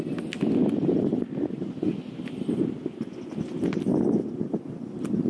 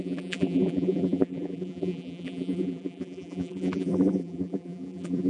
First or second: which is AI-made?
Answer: second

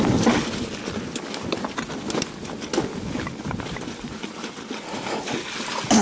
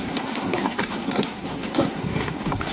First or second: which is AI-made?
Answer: second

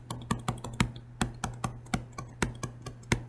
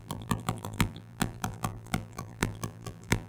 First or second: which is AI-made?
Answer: second